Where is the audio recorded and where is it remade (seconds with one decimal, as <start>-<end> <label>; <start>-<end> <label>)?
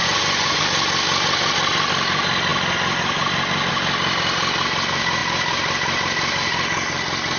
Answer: 0.0-0.6 remade; 0.6-7.4 recorded